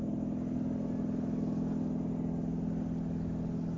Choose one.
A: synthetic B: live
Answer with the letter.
B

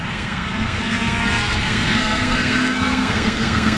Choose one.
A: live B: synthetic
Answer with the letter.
B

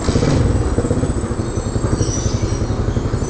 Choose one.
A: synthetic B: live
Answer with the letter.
B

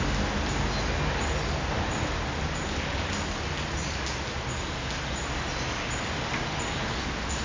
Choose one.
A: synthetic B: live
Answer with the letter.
B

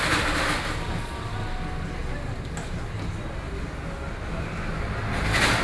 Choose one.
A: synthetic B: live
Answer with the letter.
B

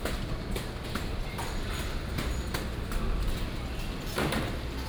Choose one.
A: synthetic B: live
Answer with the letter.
B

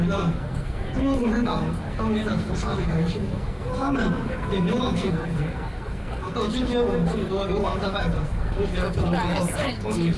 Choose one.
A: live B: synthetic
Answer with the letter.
B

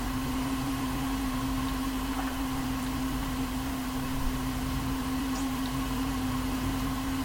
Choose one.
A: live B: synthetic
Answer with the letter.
B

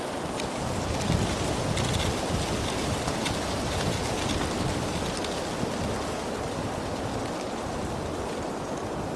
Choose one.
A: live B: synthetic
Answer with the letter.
A